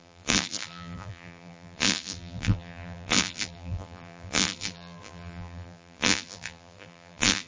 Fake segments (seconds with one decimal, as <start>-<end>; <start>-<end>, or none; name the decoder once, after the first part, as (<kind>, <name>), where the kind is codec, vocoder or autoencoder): 0.0-7.5 (vocoder, BigVGAN v2)